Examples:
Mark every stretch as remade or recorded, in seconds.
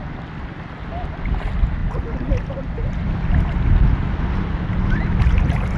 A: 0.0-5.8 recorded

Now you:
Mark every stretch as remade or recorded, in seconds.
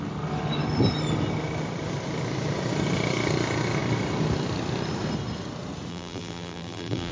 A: 0.0-5.9 recorded; 5.9-7.1 remade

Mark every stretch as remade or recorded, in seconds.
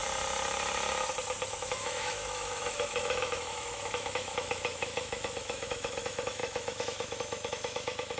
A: 0.0-1.5 recorded; 1.5-8.2 remade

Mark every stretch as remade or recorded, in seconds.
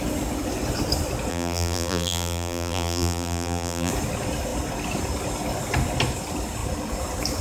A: 0.0-1.3 recorded; 1.3-3.9 remade; 3.9-7.4 recorded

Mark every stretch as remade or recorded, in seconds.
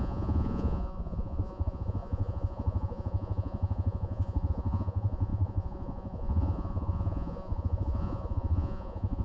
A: 0.0-9.2 remade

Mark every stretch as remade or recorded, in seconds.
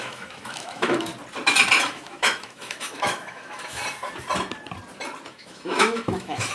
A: 0.0-1.1 remade; 1.1-1.8 recorded; 1.8-3.8 remade; 3.8-5.3 recorded; 5.3-6.5 remade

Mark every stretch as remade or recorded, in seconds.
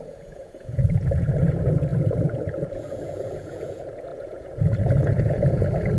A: 0.0-6.0 remade